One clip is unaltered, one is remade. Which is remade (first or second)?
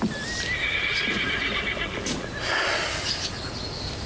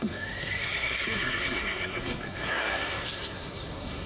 second